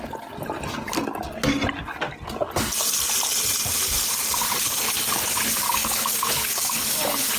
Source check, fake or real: real